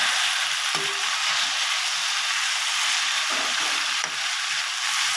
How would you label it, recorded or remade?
recorded